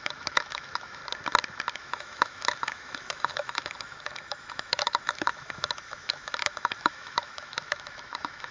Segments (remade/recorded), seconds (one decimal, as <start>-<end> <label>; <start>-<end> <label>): 0.0-1.0 remade; 1.0-1.7 recorded; 1.7-8.5 remade